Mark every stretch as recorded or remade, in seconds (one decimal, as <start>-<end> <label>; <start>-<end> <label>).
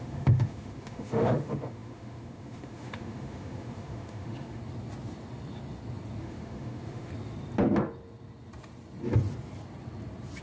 0.0-4.6 remade; 4.6-6.2 recorded; 6.2-7.1 remade; 7.1-10.4 recorded